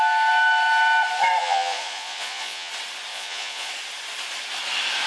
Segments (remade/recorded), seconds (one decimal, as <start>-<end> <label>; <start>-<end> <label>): 0.0-1.4 recorded; 1.4-2.7 remade; 2.7-3.1 recorded; 3.1-3.7 remade; 3.7-5.1 recorded